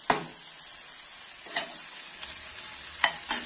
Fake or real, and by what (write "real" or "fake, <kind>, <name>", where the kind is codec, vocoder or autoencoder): real